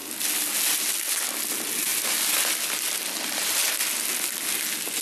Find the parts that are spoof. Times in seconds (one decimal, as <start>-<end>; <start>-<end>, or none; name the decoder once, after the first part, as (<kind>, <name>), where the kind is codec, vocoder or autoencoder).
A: none